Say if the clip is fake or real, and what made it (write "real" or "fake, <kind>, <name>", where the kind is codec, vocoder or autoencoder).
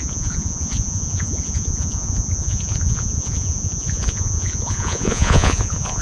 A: fake, vocoder, Vocos